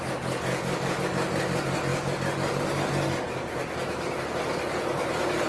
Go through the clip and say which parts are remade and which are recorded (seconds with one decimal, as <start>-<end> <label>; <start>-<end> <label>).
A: 0.0-0.5 recorded; 0.5-1.0 remade; 1.0-5.5 recorded

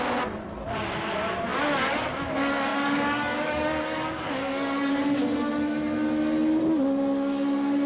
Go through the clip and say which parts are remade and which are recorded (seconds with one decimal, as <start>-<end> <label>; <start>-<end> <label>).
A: 0.0-2.7 recorded; 2.7-4.9 remade; 4.9-7.9 recorded

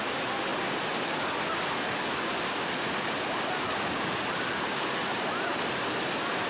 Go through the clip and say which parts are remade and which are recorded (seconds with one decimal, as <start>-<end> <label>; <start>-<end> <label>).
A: 0.0-6.5 recorded

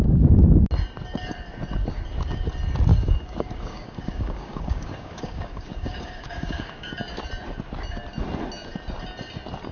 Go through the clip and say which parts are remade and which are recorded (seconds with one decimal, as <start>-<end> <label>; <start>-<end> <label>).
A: 0.0-2.9 recorded; 2.9-6.9 remade; 6.9-9.7 recorded

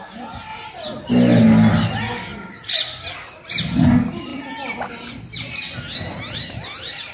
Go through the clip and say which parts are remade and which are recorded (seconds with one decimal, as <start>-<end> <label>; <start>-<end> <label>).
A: 0.0-7.1 recorded

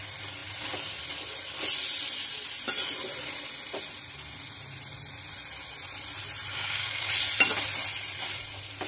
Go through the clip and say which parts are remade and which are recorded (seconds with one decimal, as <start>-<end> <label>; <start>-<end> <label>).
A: 0.0-6.5 recorded; 6.5-7.1 remade; 7.1-8.9 recorded

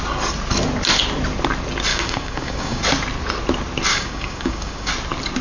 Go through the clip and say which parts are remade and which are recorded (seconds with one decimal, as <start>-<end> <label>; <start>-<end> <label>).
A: 0.0-1.9 recorded; 1.9-2.8 remade; 2.8-3.9 recorded; 3.9-4.9 remade; 4.9-5.4 recorded

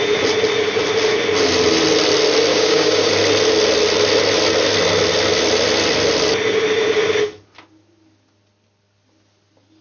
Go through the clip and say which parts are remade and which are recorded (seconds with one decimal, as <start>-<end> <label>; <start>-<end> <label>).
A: 0.0-2.5 recorded; 2.5-3.1 remade; 3.1-9.8 recorded